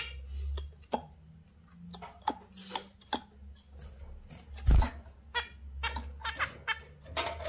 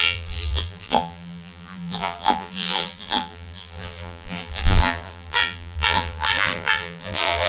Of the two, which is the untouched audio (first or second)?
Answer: first